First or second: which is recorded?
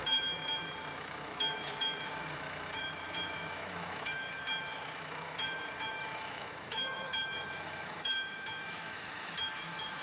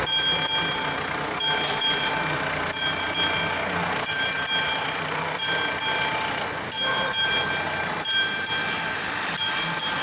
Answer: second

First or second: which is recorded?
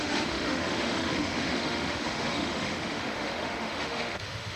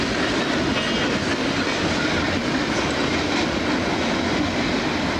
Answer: second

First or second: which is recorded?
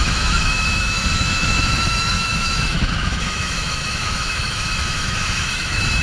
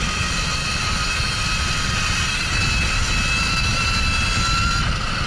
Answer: second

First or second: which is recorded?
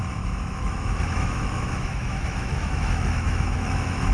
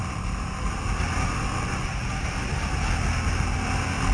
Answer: second